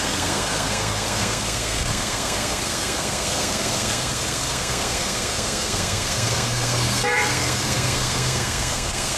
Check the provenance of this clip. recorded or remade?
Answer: remade